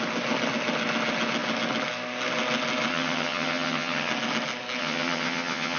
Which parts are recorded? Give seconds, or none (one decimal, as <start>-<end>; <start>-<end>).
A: 0.0-2.9; 4.1-4.8

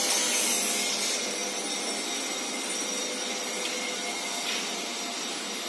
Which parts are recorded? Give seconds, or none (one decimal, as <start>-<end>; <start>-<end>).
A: 0.0-5.7

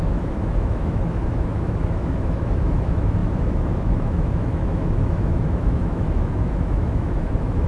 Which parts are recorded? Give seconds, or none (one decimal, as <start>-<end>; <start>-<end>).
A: none

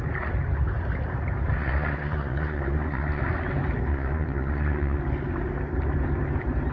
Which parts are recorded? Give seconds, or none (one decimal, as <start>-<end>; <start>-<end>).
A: 0.0-1.6; 3.2-3.9; 5.0-6.7

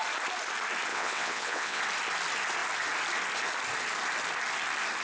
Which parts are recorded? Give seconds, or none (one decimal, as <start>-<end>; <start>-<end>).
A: 0.0-0.9; 1.8-5.0